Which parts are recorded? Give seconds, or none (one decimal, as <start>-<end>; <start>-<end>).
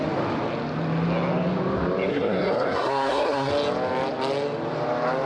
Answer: 0.0-2.1; 3.5-5.3